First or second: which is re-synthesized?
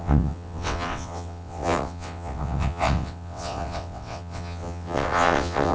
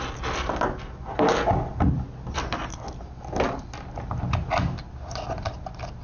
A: first